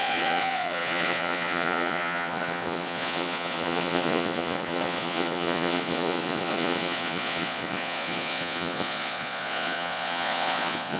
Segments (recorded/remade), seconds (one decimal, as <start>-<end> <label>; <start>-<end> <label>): 0.0-11.0 remade